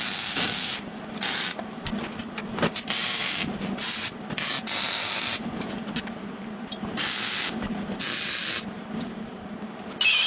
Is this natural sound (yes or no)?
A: no